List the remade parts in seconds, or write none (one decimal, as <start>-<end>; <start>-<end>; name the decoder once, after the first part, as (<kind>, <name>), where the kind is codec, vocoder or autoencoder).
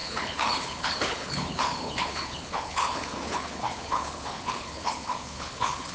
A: 0.0-5.9 (codec, HILCodec)